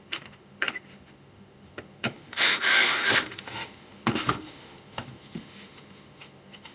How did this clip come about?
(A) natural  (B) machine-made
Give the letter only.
B